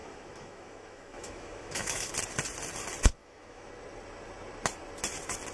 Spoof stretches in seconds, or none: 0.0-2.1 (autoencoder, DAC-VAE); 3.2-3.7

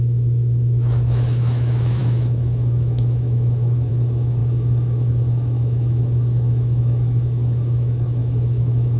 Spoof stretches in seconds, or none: 0.0-9.0 (autoencoder, DAC-VAE)

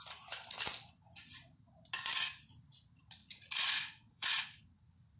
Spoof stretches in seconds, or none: 3.2-4.4 (vocoder, Vocos)

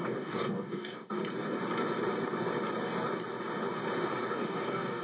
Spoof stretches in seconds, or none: 0.0-1.2 (codec, DAC); 4.2-5.0

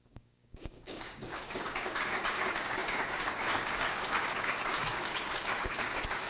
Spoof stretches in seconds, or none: 0.0-6.3 (codec, DAC)

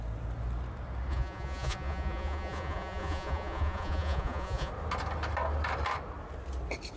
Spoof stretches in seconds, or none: 1.1-4.7 (vocoder, Vocos)